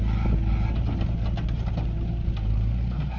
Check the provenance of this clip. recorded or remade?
recorded